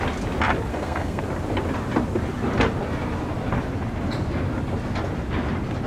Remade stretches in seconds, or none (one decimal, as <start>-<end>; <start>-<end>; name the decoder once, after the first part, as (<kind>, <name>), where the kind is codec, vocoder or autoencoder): 0.7-1.2 (codec, SNAC)